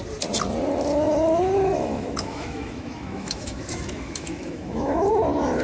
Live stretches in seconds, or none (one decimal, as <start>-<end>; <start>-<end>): 0.0-1.7; 5.1-5.6